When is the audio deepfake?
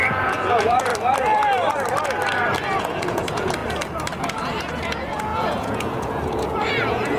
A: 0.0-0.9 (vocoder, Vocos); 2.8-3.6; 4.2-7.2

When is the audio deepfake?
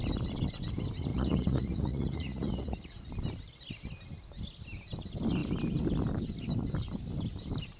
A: 1.1-3.1 (vocoder, Vocos)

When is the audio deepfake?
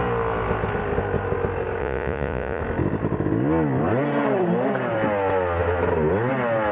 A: 1.8-2.6 (vocoder, Vocos)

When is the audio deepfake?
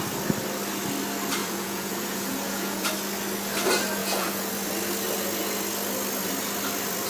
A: 1.4-2.9 (vocoder, Vocos); 4.0-4.5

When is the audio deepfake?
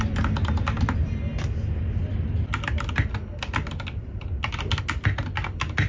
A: none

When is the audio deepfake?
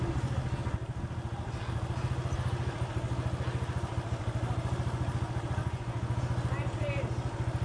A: 5.6-6.2 (vocoder, Vocos)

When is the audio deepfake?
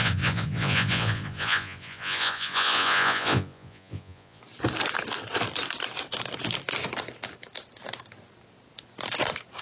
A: 0.0-4.4 (vocoder, Vocos)